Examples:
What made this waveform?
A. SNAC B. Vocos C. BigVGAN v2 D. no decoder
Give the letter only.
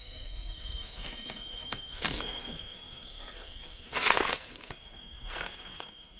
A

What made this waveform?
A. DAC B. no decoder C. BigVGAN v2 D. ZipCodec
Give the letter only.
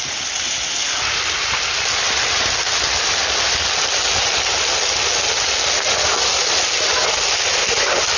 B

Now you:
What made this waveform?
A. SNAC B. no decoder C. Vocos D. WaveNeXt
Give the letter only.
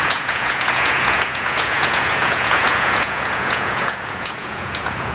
C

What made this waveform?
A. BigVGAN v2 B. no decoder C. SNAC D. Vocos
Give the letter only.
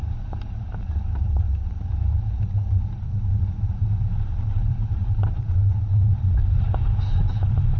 A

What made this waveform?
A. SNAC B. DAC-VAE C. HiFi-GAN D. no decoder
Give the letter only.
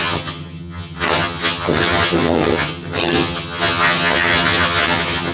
C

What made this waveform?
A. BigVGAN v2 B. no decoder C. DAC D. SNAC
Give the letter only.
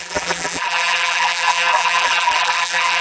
A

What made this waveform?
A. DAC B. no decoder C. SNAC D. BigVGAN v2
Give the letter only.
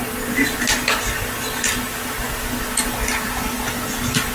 B